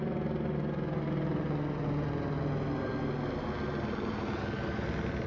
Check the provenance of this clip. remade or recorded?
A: recorded